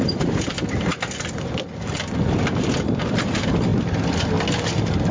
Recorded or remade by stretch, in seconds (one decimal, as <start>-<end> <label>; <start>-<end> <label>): 0.0-0.9 remade; 0.9-2.2 recorded; 2.2-3.7 remade; 3.7-5.1 recorded